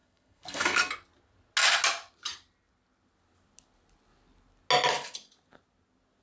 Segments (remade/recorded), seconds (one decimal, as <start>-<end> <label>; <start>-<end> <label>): 0.0-0.9 remade; 0.9-6.2 recorded